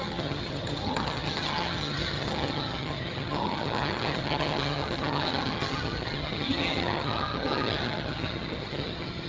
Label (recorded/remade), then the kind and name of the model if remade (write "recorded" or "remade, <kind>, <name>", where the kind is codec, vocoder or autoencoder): remade, vocoder, HiFi-GAN